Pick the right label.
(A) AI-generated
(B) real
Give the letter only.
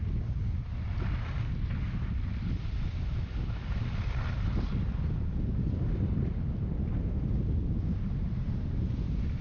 B